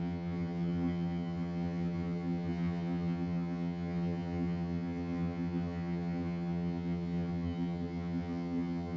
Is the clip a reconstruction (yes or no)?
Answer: yes